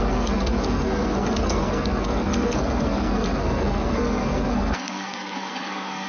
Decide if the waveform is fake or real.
fake